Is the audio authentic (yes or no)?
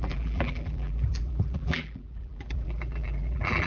no